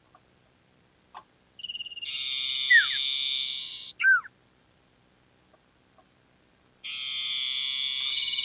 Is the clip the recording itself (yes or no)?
yes